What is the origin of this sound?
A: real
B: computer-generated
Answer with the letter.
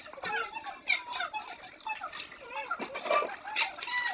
A